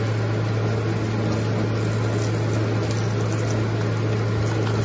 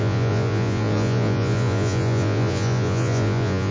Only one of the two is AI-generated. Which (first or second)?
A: second